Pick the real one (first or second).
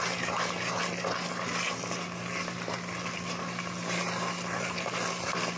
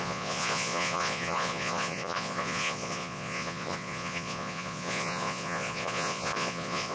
first